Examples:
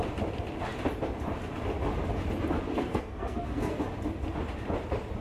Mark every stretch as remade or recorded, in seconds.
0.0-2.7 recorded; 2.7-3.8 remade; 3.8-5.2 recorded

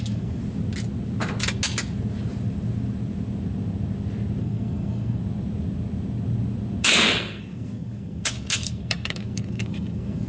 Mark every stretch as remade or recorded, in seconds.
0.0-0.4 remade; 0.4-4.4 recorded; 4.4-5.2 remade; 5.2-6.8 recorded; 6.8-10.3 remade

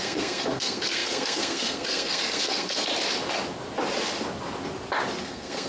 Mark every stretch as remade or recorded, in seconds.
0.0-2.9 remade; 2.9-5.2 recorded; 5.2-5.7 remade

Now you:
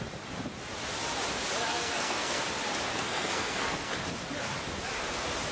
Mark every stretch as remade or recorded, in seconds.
0.0-1.7 recorded; 1.7-2.4 remade; 2.4-2.9 recorded; 2.9-3.9 remade; 3.9-5.5 recorded

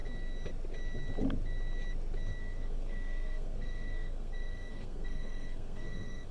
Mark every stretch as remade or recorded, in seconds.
0.0-2.4 recorded; 2.4-6.3 remade